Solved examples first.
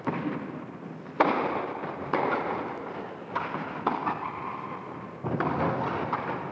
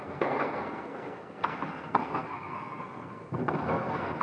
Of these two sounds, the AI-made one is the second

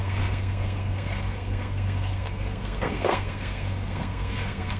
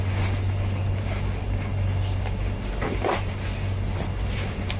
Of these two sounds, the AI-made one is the first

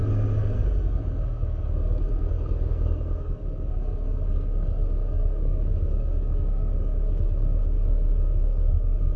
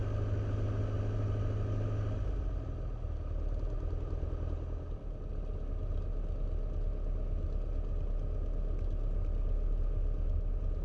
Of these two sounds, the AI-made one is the first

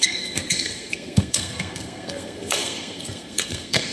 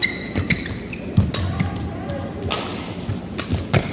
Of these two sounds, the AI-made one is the first